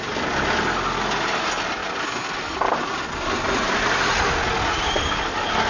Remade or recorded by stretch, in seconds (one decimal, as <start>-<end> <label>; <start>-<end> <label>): 0.0-5.7 recorded

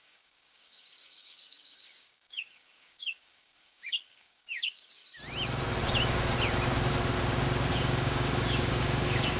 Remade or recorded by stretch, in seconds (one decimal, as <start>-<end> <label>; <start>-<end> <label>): 0.0-5.0 remade; 5.0-7.7 recorded; 7.7-9.4 remade

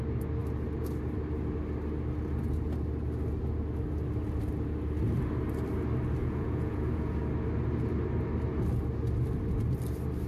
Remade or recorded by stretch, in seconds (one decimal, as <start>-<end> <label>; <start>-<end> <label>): 0.0-6.2 recorded; 6.2-7.2 remade; 7.2-10.3 recorded

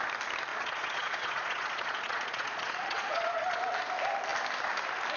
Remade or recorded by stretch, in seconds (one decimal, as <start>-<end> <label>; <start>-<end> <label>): 0.0-0.5 recorded; 0.5-3.6 remade; 3.6-5.2 recorded

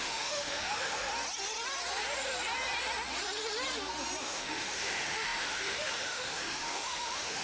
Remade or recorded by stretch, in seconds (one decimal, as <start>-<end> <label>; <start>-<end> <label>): 0.0-1.1 remade; 1.1-4.2 recorded; 4.2-7.4 remade

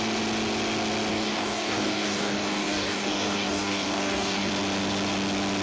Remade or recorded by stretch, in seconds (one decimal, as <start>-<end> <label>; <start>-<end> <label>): 0.0-1.1 recorded; 1.1-4.5 remade; 4.5-5.6 recorded

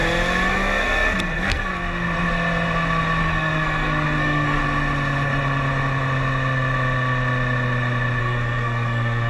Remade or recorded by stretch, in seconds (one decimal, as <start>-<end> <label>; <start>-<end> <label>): 0.0-0.5 recorded; 0.5-1.7 remade; 1.7-3.2 recorded; 3.2-4.6 remade; 4.6-8.2 recorded; 8.2-9.3 remade